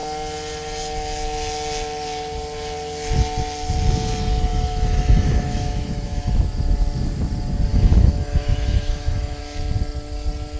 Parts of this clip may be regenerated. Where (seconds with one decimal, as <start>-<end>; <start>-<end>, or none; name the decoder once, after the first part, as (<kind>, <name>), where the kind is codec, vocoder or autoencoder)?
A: 4.5-6.3 (autoencoder, DAC-VAE); 7.7-9.4